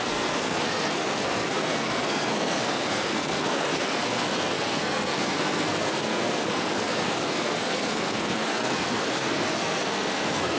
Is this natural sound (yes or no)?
no